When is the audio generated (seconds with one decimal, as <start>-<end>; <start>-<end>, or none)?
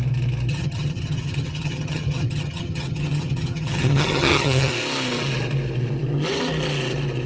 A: 0.5-4.7